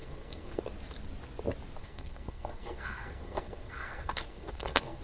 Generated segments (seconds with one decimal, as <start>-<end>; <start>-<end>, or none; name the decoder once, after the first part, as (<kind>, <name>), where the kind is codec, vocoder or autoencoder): 0.0-0.6 (codec, SNAC); 1.8-5.0